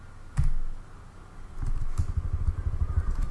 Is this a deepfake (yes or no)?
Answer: no